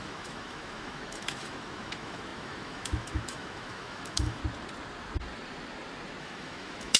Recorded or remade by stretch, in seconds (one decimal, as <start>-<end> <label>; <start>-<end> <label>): 0.0-4.4 remade; 4.4-6.2 recorded; 6.2-7.0 remade